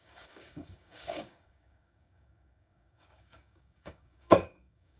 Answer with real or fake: fake